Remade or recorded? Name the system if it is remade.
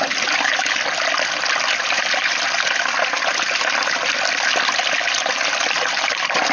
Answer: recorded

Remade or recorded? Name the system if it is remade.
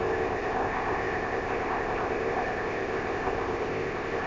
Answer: remade, codec, ZipCodec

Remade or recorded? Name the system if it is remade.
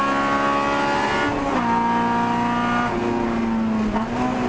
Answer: recorded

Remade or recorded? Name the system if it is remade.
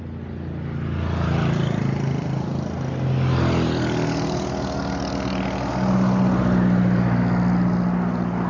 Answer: recorded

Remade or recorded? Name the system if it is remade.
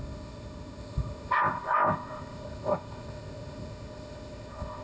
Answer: remade, codec, ZipCodec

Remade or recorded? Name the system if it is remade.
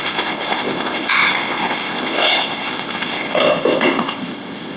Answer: remade, codec, ZipCodec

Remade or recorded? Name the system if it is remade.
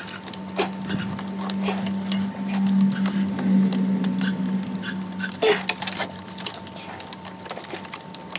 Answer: recorded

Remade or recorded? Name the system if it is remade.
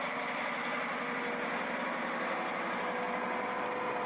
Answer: recorded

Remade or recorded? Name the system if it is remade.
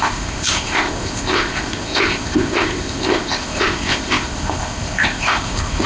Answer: remade, codec, ZipCodec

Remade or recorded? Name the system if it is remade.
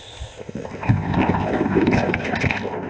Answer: remade, codec, ZipCodec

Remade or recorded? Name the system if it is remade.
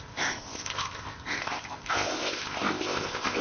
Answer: remade, codec, ZipCodec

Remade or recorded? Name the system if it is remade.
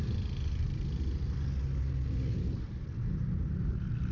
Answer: recorded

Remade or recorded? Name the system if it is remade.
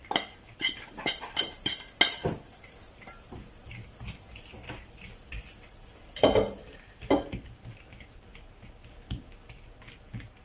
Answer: recorded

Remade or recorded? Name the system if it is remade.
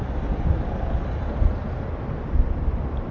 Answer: recorded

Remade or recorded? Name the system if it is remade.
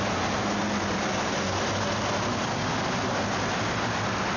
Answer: recorded